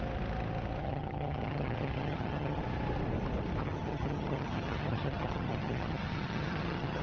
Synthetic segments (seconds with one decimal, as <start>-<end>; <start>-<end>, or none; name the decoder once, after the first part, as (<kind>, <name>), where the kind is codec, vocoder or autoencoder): 0.8-2.6 (vocoder, HiFi-GAN); 3.6-7.0

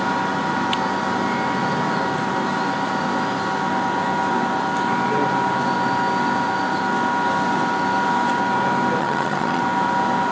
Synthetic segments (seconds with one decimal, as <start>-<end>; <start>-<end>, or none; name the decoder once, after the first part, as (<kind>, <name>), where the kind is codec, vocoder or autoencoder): 9.0-9.6 (vocoder, HiFi-GAN)

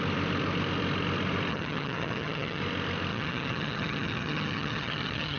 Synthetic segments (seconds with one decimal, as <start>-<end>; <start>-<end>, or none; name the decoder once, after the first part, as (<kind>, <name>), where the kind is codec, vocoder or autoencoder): 1.5-2.6 (vocoder, HiFi-GAN); 3.1-5.4